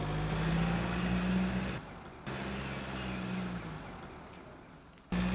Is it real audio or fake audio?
real